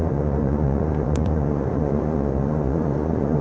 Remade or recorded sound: remade